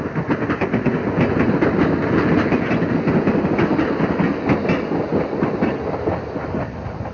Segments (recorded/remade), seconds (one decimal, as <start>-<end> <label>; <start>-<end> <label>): 0.0-7.1 recorded